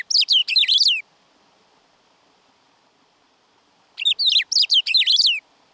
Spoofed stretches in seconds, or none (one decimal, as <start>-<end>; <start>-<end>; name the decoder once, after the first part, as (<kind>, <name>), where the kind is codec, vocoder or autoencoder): none